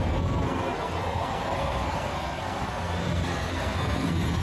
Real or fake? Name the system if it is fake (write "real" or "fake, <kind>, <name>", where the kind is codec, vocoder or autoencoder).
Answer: fake, codec, SNAC